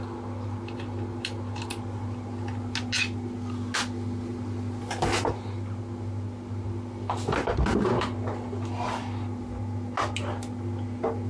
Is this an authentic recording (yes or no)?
yes